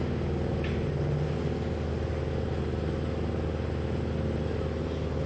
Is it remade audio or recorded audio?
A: recorded